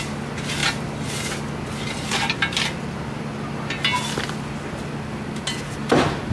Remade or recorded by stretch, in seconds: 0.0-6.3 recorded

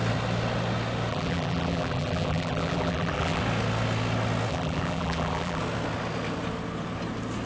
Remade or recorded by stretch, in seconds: 0.0-1.1 recorded; 1.1-3.4 remade; 3.4-4.5 recorded; 4.5-5.6 remade; 5.6-7.5 recorded

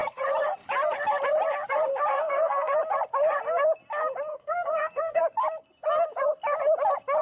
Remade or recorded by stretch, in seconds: 0.0-2.1 recorded; 2.1-2.7 remade; 2.7-4.3 recorded; 4.3-5.2 remade; 5.2-7.2 recorded

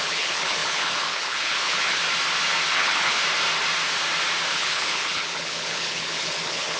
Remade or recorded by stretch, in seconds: 0.0-2.0 remade; 2.0-2.7 recorded; 2.7-3.2 remade; 3.2-4.5 recorded; 4.5-6.8 remade

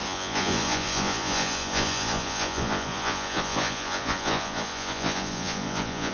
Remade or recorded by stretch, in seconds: 0.0-6.1 remade

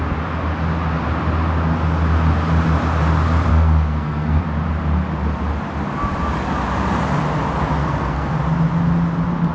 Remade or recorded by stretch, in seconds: 0.0-3.5 recorded; 3.5-4.4 remade; 4.4-7.8 recorded; 7.8-8.3 remade; 8.3-9.5 recorded